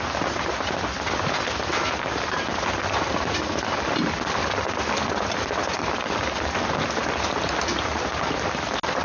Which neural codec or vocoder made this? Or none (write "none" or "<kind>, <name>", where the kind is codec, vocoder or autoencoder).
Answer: none